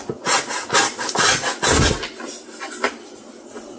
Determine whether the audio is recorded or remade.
recorded